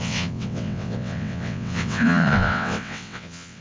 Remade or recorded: remade